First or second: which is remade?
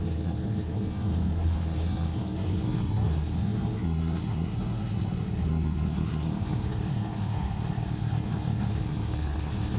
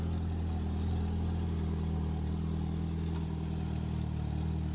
first